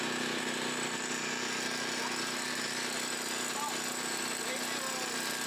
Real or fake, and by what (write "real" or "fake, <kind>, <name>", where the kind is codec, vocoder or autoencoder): real